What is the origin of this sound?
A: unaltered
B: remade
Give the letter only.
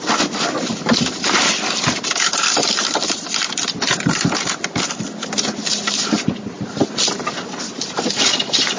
A